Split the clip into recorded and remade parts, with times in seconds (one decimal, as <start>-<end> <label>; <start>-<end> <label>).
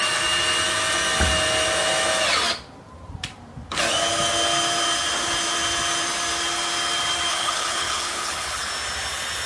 0.0-7.3 recorded; 7.3-8.7 remade; 8.7-9.5 recorded